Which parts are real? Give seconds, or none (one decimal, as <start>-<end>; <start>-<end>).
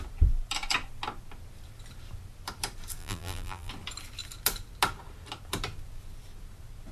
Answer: 0.0-3.0; 3.7-6.9